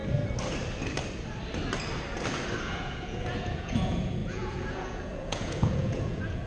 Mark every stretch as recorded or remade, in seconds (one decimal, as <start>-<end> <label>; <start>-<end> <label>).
0.0-2.6 recorded; 2.6-6.5 remade